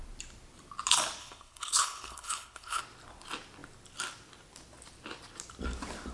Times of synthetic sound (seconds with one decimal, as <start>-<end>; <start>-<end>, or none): 1.2-2.8